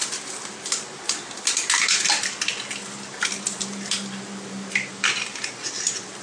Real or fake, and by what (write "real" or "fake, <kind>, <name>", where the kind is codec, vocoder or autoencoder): real